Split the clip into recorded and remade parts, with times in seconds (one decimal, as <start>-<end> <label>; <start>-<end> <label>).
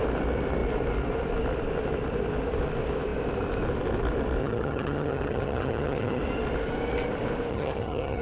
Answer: 0.0-4.4 recorded; 4.4-6.2 remade; 6.2-7.5 recorded; 7.5-8.2 remade